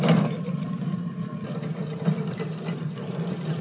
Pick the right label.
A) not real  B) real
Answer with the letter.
B